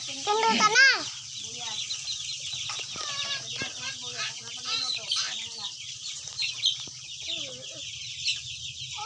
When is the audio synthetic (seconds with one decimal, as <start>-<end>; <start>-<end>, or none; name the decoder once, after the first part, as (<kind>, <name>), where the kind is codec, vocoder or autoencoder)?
none